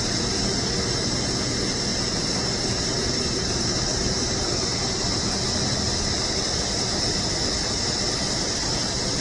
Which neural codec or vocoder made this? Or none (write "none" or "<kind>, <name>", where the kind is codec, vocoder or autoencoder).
none